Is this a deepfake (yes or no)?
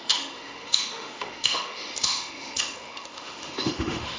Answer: yes